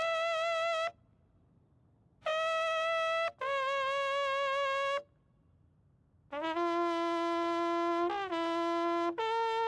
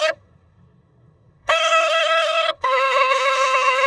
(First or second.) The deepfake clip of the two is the second